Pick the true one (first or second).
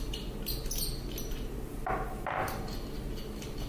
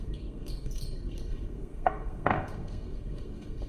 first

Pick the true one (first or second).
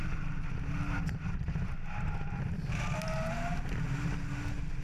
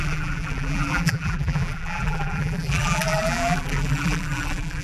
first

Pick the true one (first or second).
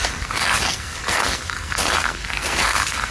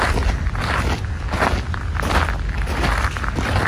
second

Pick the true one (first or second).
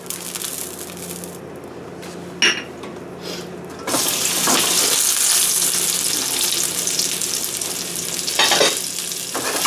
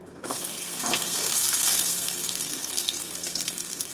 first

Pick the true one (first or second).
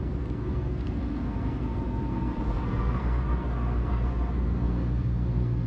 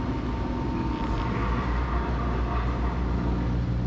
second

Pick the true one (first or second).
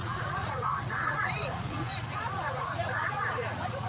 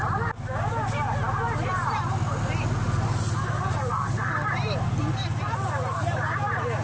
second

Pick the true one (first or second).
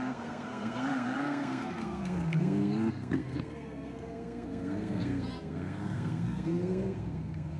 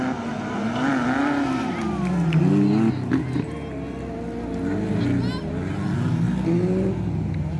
second